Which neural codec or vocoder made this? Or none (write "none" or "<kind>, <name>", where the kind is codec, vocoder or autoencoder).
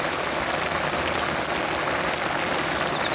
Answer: none